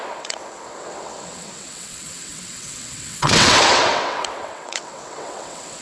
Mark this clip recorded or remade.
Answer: remade